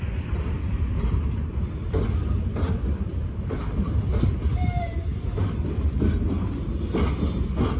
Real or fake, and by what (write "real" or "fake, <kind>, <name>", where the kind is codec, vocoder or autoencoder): real